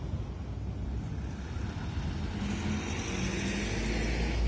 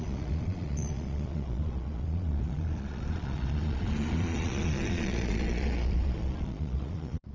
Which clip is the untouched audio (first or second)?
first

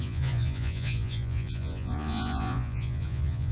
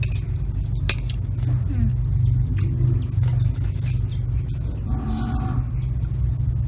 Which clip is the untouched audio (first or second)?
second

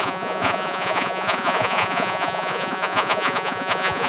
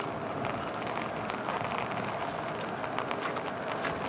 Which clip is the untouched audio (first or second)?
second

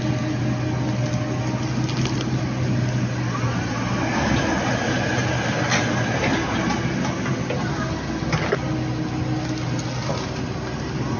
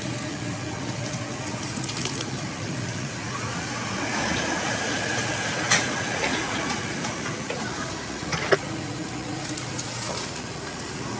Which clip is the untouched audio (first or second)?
first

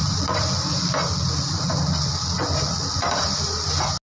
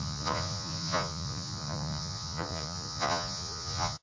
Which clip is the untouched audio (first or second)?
first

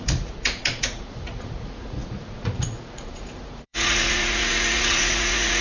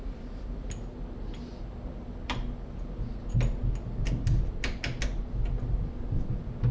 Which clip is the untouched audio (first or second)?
second